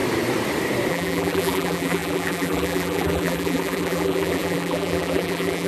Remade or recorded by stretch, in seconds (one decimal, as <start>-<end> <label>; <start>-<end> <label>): 0.0-0.9 recorded; 0.9-5.7 remade